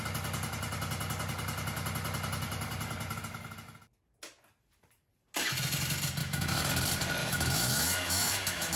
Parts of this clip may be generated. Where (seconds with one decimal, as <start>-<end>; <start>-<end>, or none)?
6.2-6.7; 7.2-8.8